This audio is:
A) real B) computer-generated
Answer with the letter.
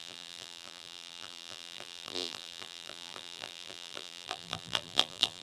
B